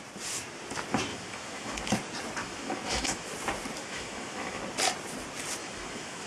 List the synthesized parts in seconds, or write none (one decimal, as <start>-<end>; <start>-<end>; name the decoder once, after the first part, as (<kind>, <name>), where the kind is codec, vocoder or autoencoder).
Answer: 1.1-1.8 (autoencoder, DAC-VAE); 2.4-3.3; 3.8-4.6; 5.6-6.3